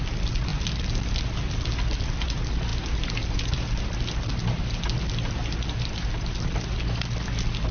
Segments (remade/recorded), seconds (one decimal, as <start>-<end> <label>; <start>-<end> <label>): 0.0-7.7 recorded